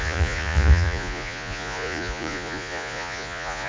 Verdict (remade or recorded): remade